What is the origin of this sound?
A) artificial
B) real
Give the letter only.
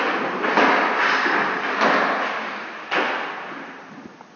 B